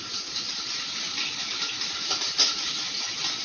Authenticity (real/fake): real